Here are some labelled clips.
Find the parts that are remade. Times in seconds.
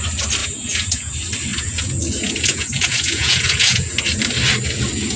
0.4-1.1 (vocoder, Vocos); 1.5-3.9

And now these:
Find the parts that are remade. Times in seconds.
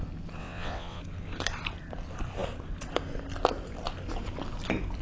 0.4-1.0 (vocoder, WaveNeXt)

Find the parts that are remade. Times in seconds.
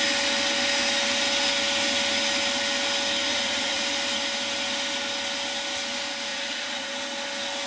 3.3-3.8 (vocoder, Vocos); 6.3-6.9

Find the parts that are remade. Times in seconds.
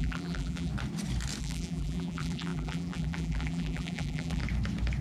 0.0-0.7 (vocoder, BigVGAN v2); 1.4-4.4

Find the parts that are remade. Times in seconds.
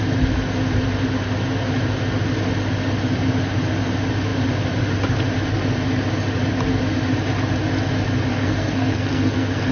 8.3-9.7 (codec, SNAC)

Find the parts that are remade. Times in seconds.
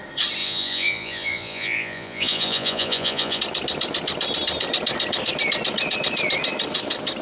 0.4-3.4 (vocoder, Vocos)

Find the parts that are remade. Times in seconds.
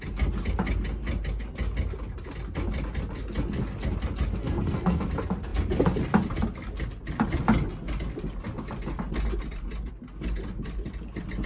4.4-5.0 (codec, SNAC)